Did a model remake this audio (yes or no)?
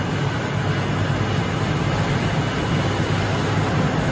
no